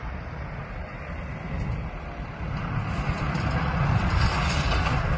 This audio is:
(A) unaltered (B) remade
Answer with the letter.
A